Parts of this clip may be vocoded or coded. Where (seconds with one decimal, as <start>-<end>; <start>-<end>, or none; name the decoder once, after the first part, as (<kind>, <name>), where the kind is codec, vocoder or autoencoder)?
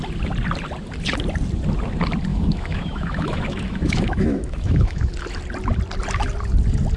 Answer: 2.3-5.1 (autoencoder, DAC-VAE)